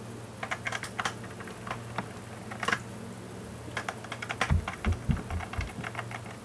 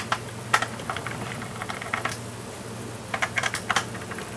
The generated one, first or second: second